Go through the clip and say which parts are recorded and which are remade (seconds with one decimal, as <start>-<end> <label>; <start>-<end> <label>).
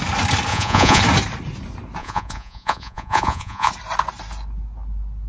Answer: 0.0-0.5 recorded; 0.5-1.0 remade; 1.0-2.0 recorded; 2.0-3.7 remade; 3.7-5.3 recorded